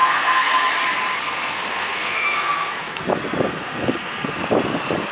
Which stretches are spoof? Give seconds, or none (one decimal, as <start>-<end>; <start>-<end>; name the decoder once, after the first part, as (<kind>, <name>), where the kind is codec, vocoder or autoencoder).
0.0-0.5 (codec, SNAC); 1.2-3.0; 3.5-4.4